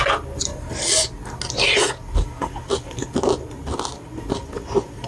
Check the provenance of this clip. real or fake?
real